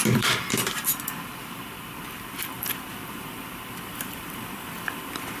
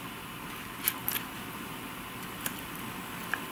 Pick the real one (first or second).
second